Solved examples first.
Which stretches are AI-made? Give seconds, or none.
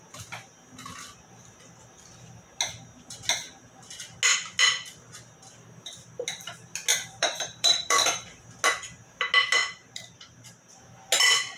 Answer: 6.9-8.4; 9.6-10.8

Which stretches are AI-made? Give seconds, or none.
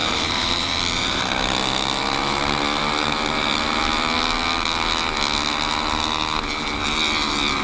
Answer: 0.0-1.2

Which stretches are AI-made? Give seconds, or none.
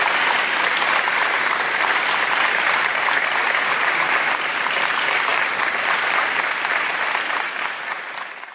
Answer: none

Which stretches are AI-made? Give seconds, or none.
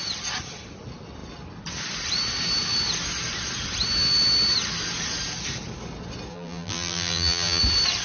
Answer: 6.3-7.6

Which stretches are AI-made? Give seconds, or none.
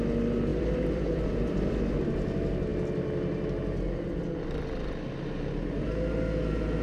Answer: 0.5-1.9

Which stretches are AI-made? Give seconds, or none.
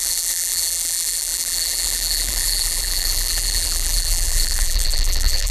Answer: 0.0-5.5